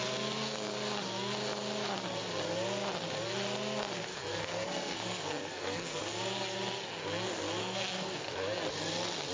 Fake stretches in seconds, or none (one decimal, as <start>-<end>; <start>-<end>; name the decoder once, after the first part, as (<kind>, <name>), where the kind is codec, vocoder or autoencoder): 4.1-6.0 (codec, SNAC); 7.6-8.3